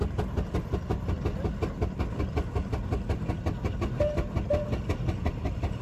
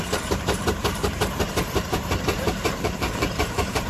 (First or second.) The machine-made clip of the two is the second